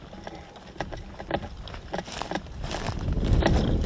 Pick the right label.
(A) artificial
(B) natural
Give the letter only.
B